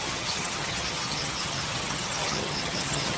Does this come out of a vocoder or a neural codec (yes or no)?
yes